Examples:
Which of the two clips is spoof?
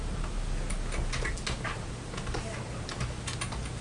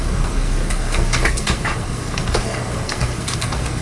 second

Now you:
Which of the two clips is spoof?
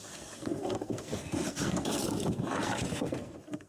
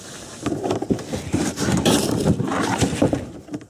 first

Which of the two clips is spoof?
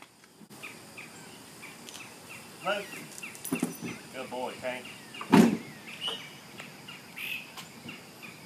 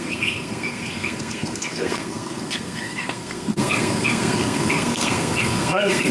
second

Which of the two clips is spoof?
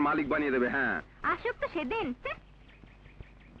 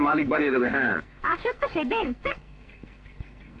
second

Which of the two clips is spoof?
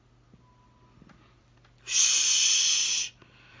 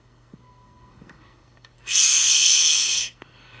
second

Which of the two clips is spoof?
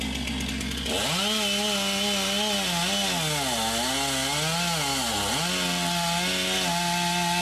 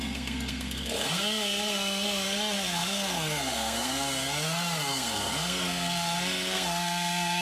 second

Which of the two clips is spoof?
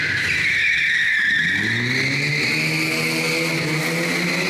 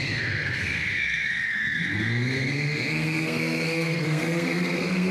second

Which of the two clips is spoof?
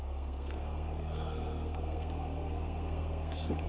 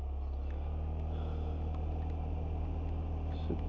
first